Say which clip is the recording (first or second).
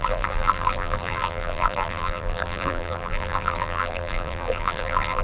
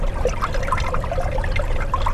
second